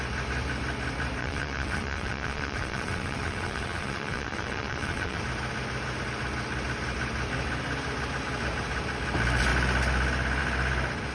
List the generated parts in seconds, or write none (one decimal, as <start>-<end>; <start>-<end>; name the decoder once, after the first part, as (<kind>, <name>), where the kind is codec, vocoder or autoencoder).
1.2-5.2 (vocoder, WaveNeXt)